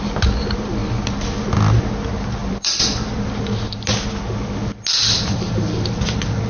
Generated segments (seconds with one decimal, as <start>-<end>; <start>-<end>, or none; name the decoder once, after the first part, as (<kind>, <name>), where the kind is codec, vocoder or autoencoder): 2.4-3.2 (vocoder, BigVGAN v2); 5.0-6.5